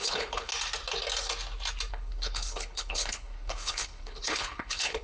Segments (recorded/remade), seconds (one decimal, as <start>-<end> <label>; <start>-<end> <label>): 0.0-0.5 remade; 0.5-1.9 recorded; 1.9-5.0 remade